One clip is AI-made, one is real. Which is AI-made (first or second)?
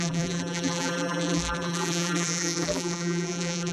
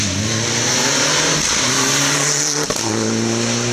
first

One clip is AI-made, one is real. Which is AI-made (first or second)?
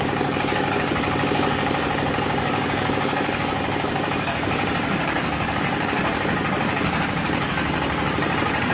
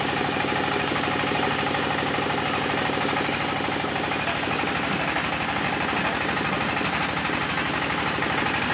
first